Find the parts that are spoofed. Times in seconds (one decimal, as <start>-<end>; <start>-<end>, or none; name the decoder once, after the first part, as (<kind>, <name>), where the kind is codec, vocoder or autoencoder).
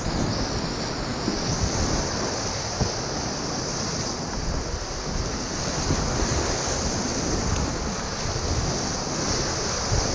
none